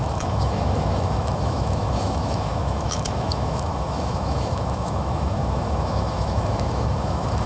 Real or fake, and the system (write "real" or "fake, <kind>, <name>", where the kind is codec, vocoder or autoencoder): fake, autoencoder, DAC-VAE